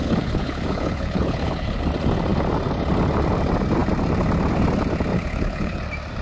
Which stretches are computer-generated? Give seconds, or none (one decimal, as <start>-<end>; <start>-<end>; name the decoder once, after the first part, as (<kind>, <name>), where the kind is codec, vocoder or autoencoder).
0.0-1.8 (codec, HILCodec); 5.1-5.8